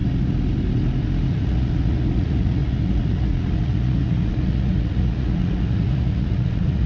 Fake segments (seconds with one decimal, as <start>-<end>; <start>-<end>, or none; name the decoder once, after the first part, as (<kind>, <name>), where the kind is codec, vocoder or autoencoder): 1.3-6.9 (vocoder, Vocos)